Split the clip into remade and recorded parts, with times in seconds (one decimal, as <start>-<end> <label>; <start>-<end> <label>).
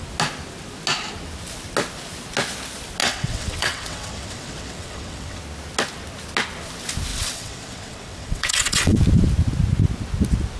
0.0-3.0 recorded; 3.0-5.4 remade; 5.4-7.1 recorded; 7.1-9.0 remade; 9.0-10.6 recorded